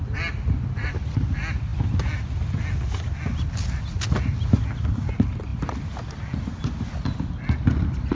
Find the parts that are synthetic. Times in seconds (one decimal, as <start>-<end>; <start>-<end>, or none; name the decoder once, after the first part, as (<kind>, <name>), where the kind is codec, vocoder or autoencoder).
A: none